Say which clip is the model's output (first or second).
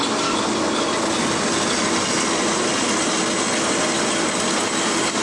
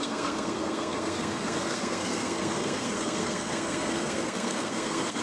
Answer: second